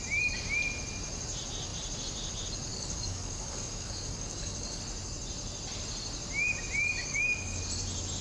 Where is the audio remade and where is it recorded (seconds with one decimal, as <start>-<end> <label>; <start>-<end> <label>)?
0.0-2.7 recorded; 2.7-4.8 remade; 4.8-7.0 recorded; 7.0-7.6 remade; 7.6-8.2 recorded